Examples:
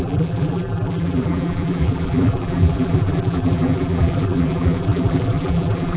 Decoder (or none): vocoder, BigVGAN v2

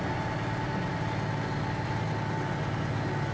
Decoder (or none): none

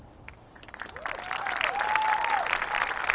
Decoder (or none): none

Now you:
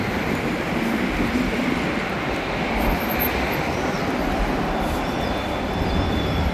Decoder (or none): none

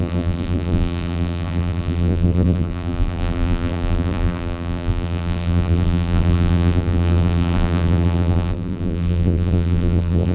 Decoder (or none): vocoder, BigVGAN v2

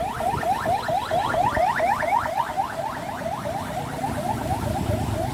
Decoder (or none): none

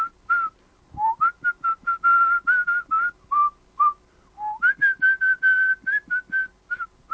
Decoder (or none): none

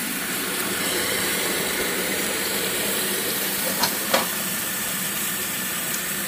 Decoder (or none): vocoder, BigVGAN v2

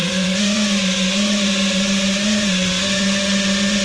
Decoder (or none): vocoder, BigVGAN v2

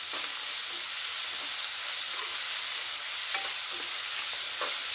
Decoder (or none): none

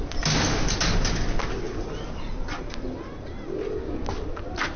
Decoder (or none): none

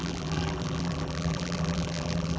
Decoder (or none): vocoder, BigVGAN v2